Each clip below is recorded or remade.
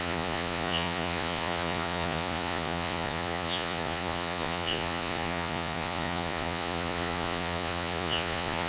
remade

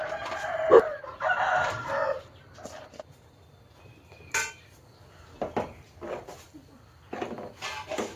recorded